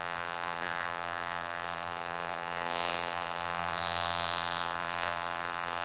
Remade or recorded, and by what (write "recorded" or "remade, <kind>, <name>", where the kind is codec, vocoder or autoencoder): remade, vocoder, BigVGAN v2